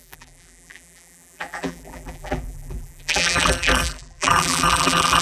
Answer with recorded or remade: remade